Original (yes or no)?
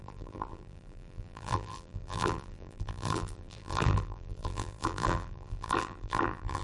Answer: no